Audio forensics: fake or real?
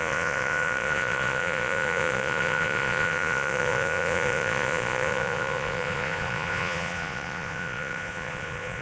fake